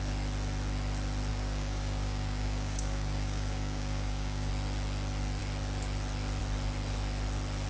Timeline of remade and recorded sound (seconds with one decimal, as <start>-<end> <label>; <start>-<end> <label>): 0.0-1.3 recorded; 1.3-4.5 remade; 4.5-7.7 recorded